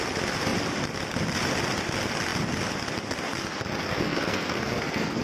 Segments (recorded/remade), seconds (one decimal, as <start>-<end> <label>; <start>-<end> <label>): 0.0-3.8 recorded; 3.8-5.2 remade